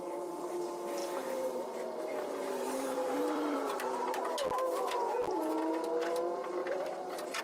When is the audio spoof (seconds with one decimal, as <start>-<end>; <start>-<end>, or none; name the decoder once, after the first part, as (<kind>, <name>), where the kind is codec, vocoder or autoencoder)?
1.0-4.2 (vocoder, BigVGAN v2); 6.6-7.4